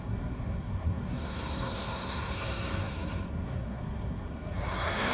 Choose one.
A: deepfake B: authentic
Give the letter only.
A